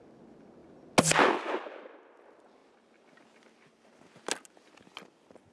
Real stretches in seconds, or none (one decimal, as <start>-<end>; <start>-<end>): 0.0-5.5